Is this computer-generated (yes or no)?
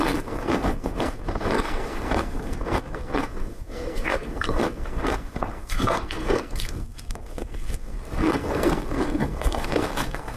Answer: yes